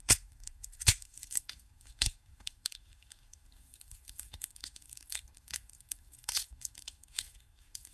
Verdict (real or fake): fake